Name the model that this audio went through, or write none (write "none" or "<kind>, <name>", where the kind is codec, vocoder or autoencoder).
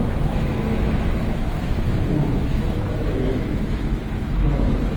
autoencoder, DAC-VAE